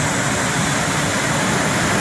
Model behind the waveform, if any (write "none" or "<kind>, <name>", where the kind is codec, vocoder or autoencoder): none